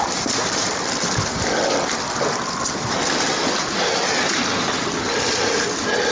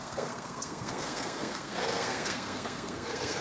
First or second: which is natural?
first